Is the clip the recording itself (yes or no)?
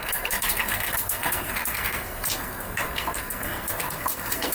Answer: no